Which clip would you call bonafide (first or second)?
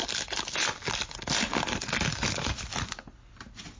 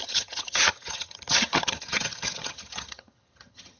first